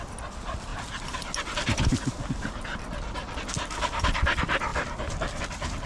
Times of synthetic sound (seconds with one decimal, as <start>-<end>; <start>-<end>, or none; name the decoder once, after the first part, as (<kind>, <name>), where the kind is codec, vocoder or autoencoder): none